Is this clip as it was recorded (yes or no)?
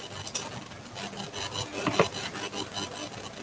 yes